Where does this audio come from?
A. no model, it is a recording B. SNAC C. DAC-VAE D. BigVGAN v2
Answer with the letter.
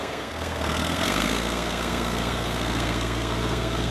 B